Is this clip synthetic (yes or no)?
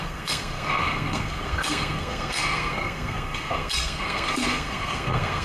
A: yes